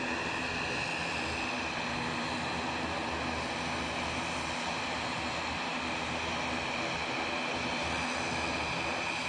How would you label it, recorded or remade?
recorded